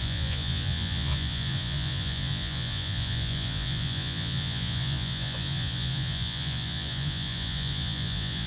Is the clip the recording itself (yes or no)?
no